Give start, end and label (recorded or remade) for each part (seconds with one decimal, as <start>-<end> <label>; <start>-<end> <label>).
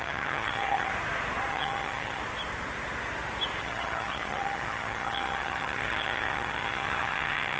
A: 0.0-0.9 remade; 0.9-1.5 recorded; 1.5-2.2 remade; 2.2-3.6 recorded; 3.6-7.6 remade